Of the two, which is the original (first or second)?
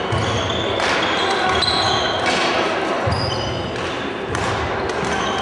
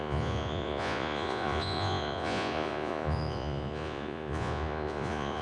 first